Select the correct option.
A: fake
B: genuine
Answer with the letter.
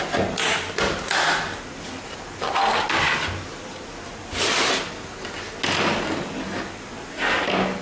B